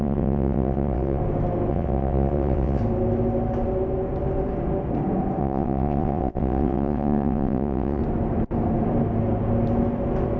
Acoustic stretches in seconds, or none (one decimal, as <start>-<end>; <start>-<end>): 1.2-1.7; 2.8-5.4; 8.0-10.4